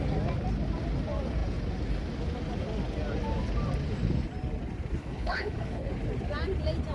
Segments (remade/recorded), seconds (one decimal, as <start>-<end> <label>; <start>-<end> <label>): 0.0-5.0 recorded; 5.0-5.9 remade; 5.9-6.9 recorded